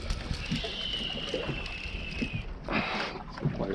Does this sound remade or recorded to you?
recorded